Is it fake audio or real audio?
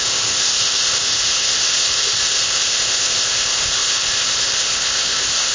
fake